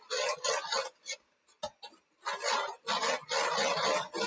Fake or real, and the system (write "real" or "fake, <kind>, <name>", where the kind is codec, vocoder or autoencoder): real